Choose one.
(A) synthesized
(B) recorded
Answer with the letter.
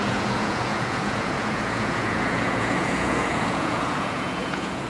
A